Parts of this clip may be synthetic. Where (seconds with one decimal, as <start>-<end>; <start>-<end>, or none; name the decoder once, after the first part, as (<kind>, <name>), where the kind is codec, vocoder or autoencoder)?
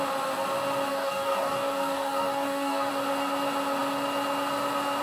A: 0.9-2.9 (codec, DAC)